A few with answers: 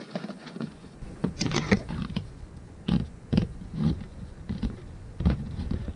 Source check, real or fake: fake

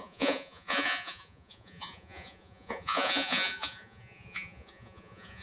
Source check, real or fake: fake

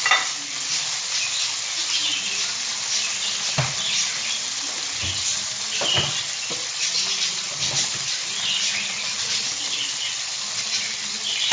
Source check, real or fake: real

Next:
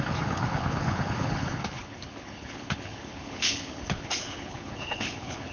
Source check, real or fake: fake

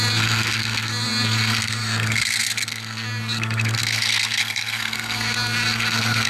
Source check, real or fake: fake